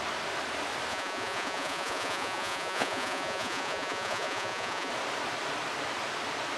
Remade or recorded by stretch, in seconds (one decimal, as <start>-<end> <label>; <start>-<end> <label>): 0.0-0.9 recorded; 0.9-4.9 remade; 4.9-6.6 recorded